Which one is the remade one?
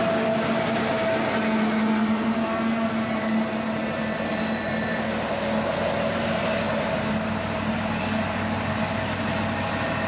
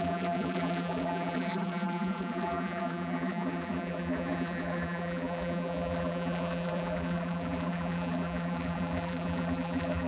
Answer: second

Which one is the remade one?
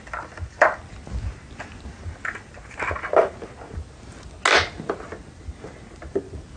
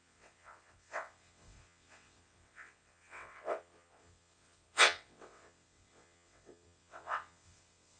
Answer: second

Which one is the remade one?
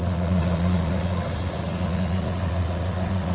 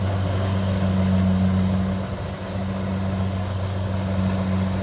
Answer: first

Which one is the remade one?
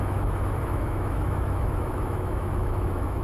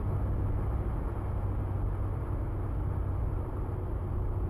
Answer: first